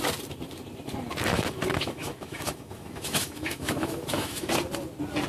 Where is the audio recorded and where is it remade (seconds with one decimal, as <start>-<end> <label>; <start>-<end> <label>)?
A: 0.0-1.3 recorded; 1.3-4.5 remade; 4.5-5.3 recorded